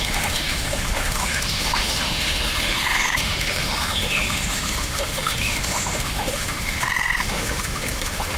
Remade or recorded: remade